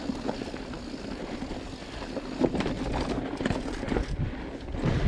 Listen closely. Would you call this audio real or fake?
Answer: real